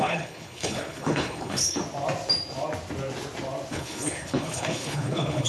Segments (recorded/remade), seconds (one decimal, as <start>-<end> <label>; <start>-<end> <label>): 0.0-1.8 remade; 1.8-3.7 recorded; 3.7-5.5 remade